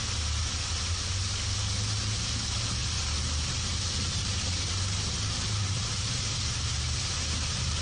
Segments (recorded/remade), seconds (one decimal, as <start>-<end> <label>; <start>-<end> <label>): 0.0-2.8 recorded; 2.8-7.8 remade